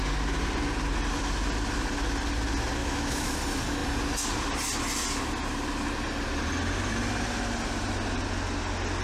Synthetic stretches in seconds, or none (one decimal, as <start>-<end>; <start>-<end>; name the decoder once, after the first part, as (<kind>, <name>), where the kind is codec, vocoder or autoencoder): 2.8-3.4 (autoencoder, DAC-VAE)